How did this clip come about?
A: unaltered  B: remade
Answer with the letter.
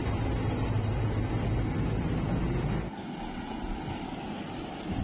A